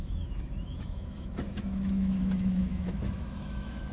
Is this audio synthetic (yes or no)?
yes